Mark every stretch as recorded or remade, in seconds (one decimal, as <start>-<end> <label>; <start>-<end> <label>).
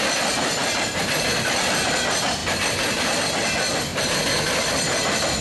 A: 0.0-5.4 recorded